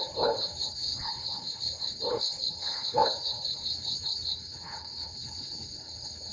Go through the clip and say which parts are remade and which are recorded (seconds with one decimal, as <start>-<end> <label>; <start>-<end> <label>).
0.0-6.3 remade